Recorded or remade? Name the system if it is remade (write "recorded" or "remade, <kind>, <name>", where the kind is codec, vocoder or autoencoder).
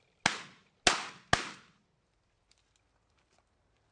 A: recorded